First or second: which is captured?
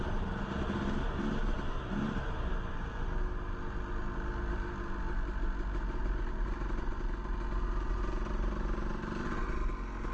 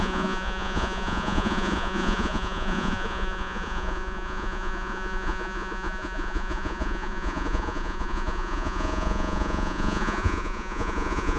first